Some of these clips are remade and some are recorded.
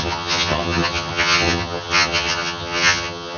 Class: remade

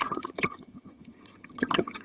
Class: remade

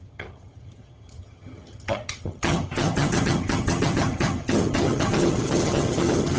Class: remade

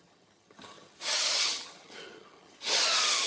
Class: remade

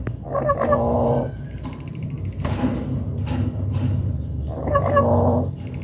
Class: recorded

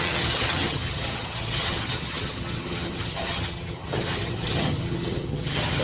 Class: remade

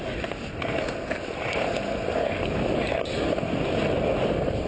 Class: recorded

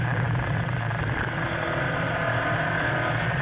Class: recorded